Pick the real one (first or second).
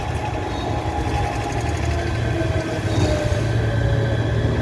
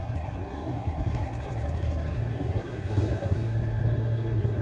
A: first